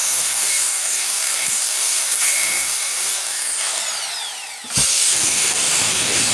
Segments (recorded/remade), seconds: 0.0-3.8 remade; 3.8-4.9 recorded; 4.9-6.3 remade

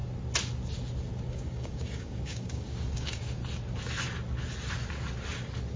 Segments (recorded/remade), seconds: 0.0-1.3 recorded; 1.3-3.4 remade; 3.4-5.8 recorded

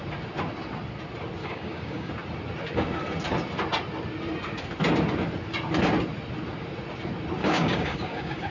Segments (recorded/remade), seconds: 0.0-1.4 recorded; 1.4-2.1 remade; 2.1-7.4 recorded; 7.4-8.5 remade

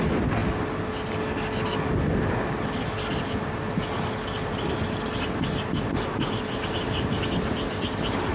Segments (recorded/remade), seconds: 0.0-8.3 recorded

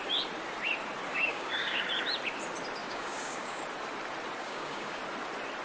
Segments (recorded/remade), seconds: 0.0-1.1 recorded; 1.1-1.8 remade; 1.8-2.8 recorded; 2.8-3.6 remade; 3.6-4.4 recorded; 4.4-5.0 remade; 5.0-5.6 recorded

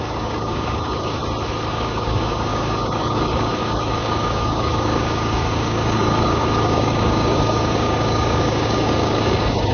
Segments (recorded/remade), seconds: 0.0-1.2 remade; 1.2-1.7 recorded; 1.7-9.7 remade

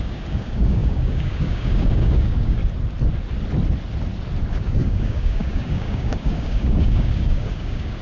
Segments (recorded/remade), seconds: 0.0-2.6 remade; 2.6-4.5 recorded; 4.5-8.0 remade